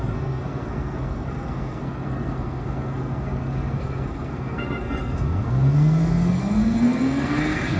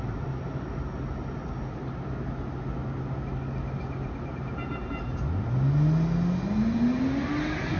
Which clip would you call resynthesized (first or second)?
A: first